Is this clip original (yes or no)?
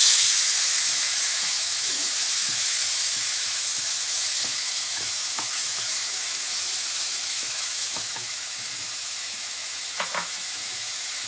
no